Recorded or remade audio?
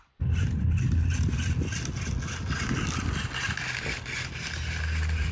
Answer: recorded